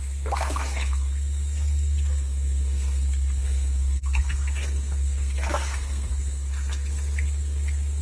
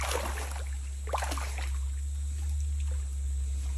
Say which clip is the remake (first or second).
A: first